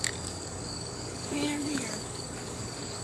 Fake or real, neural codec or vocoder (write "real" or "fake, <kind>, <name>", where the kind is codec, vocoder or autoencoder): fake, codec, DAC